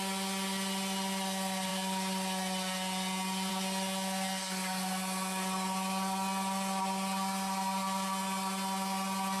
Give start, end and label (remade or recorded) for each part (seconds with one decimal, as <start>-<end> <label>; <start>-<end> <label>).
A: 0.0-9.4 recorded